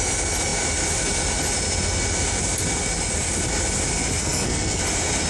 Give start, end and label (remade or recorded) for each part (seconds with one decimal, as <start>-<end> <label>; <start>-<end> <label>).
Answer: 0.0-4.2 recorded; 4.2-4.8 remade; 4.8-5.3 recorded